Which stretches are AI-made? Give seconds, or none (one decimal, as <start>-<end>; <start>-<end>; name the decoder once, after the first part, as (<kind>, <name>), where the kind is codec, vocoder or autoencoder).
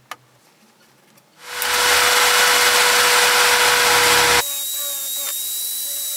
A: none